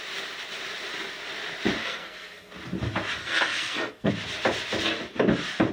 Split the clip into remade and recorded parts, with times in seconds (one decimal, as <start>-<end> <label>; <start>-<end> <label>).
0.0-1.8 recorded; 1.8-2.5 remade; 2.5-3.2 recorded; 3.2-4.1 remade; 4.1-5.7 recorded